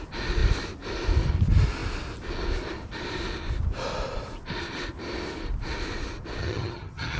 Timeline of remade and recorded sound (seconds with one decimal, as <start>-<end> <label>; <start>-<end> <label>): 0.0-6.4 recorded; 6.4-7.2 remade